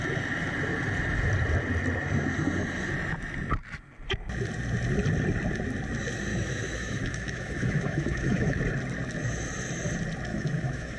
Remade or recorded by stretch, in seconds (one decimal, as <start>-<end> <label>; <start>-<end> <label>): 0.0-6.3 recorded; 6.3-8.6 remade; 8.6-10.3 recorded; 10.3-11.0 remade